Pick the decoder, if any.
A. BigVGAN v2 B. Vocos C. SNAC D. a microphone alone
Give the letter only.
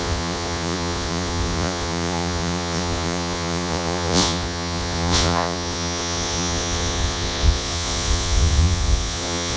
B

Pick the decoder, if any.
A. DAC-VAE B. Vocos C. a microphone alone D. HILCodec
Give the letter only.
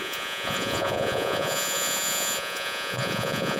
B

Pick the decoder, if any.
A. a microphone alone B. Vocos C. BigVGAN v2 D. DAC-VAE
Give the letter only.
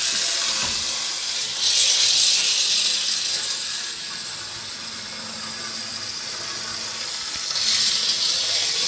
A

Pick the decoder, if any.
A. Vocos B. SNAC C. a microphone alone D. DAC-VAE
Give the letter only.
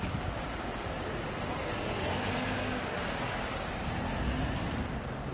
C